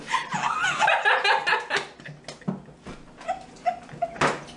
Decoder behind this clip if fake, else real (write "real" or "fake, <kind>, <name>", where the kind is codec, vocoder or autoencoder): real